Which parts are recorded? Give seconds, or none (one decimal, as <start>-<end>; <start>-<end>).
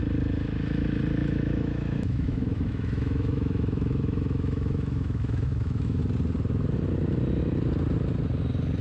0.0-1.2; 6.0-8.8